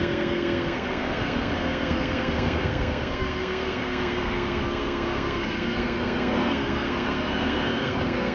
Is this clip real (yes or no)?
no